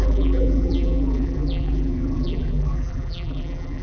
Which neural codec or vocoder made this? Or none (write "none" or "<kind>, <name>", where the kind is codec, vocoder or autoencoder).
vocoder, BigVGAN v2